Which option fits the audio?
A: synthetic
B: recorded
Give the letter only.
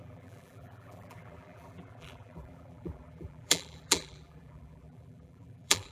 A